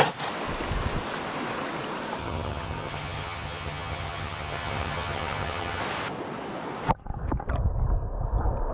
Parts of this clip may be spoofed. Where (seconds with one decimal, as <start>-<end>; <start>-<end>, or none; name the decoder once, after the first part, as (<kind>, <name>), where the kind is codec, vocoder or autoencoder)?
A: 2.2-5.8 (vocoder, HiFi-GAN)

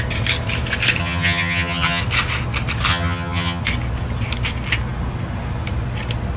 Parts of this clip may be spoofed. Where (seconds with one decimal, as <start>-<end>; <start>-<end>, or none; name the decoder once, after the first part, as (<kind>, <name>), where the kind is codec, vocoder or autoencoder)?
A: 1.0-2.0 (vocoder, HiFi-GAN); 2.9-3.6

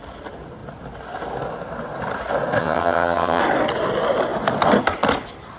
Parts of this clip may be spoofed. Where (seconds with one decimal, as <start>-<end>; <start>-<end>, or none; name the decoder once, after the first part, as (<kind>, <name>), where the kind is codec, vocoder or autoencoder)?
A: 2.6-3.4 (vocoder, HiFi-GAN)

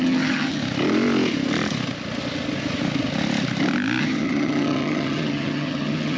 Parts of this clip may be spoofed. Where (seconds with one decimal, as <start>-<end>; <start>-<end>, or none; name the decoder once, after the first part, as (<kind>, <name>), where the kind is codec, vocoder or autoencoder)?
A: 0.0-0.6 (vocoder, HiFi-GAN); 4.0-6.2